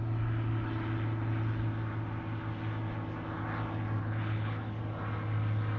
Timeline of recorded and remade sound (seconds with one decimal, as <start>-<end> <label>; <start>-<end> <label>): 0.0-4.0 recorded; 4.0-4.8 remade; 4.8-5.8 recorded